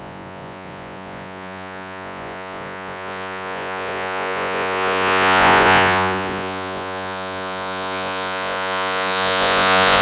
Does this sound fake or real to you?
fake